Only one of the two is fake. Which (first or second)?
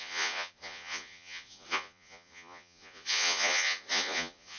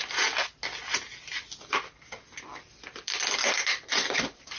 first